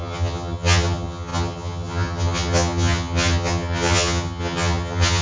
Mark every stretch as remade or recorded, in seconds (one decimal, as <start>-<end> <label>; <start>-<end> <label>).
0.0-5.2 remade